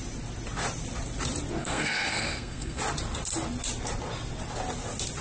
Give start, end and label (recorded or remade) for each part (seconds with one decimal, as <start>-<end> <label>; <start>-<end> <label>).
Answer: 0.0-1.6 recorded; 1.6-2.8 remade; 2.8-5.2 recorded

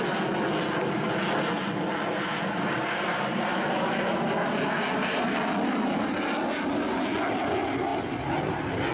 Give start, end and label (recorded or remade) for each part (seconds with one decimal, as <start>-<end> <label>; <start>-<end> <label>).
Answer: 0.0-8.9 recorded